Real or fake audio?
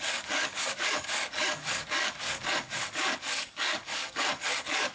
fake